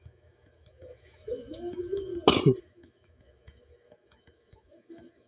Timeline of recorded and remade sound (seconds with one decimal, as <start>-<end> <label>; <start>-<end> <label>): 0.0-2.1 remade; 2.1-2.6 recorded; 2.6-5.3 remade